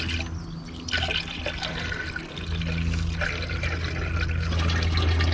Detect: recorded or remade recorded